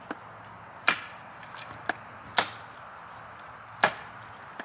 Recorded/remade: recorded